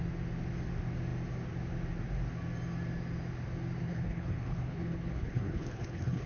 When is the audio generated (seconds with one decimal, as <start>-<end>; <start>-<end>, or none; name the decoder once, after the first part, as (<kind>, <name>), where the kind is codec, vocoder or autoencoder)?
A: 3.8-6.3 (codec, HILCodec)